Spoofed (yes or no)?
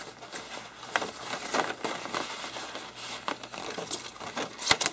no